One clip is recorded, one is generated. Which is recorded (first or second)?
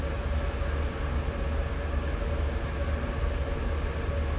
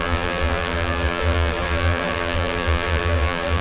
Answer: first